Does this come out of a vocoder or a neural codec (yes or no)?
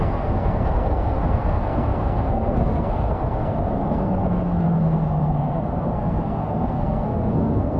yes